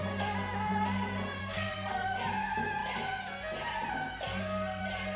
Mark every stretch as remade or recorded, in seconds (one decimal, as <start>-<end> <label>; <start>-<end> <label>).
0.0-1.4 recorded; 1.4-2.2 remade; 2.2-4.3 recorded; 4.3-4.8 remade; 4.8-5.2 recorded